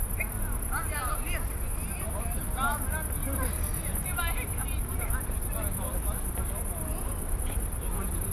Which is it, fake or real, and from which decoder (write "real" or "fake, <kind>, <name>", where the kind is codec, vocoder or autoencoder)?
real